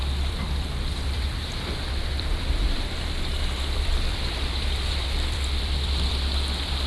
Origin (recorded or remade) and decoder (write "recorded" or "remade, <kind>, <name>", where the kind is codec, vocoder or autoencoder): remade, vocoder, BigVGAN v2